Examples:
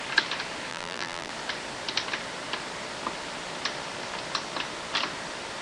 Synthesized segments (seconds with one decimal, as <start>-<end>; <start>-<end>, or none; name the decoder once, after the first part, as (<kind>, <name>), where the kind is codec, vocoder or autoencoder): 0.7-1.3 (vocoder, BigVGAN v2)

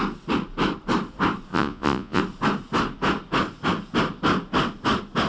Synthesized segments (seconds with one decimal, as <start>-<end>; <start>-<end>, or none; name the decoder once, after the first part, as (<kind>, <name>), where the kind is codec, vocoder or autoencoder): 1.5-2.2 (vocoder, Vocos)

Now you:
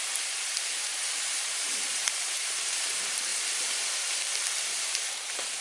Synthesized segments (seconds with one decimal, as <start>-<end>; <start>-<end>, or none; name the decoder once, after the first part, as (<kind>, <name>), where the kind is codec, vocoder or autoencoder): 0.0-3.3 (vocoder, BigVGAN v2); 4.8-5.6

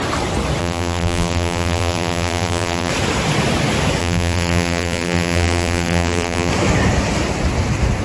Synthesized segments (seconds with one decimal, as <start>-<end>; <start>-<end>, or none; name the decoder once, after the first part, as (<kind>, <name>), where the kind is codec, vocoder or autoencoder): 0.6-2.9 (vocoder, BigVGAN v2); 4.0-6.5

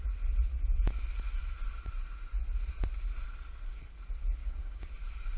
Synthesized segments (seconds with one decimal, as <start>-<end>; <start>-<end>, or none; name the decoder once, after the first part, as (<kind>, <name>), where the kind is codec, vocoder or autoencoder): 4.4-4.9 (codec, DAC)